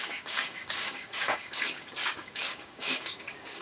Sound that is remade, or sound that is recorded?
remade